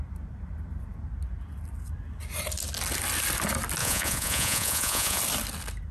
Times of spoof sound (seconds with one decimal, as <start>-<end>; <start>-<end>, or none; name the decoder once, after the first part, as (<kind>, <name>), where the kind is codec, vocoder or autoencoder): 3.8-5.2 (vocoder, Vocos)